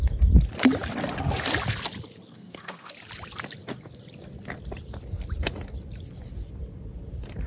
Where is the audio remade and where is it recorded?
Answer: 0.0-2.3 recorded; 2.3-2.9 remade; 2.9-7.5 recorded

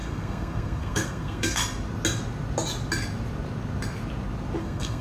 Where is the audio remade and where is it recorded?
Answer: 0.0-1.6 remade; 1.6-4.6 recorded; 4.6-5.0 remade

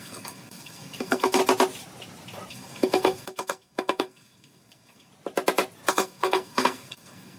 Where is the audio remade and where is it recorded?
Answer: 0.0-1.4 remade; 1.4-2.5 recorded; 2.5-5.1 remade; 5.1-5.9 recorded; 5.9-7.4 remade

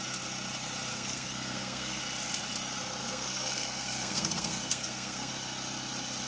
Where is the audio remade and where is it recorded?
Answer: 0.0-0.9 recorded; 0.9-2.0 remade; 2.0-3.0 recorded; 3.0-5.3 remade; 5.3-6.3 recorded

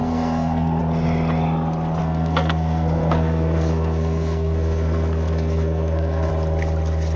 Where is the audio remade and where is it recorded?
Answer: 0.0-0.8 remade; 0.8-2.0 recorded; 2.0-6.3 remade; 6.3-7.2 recorded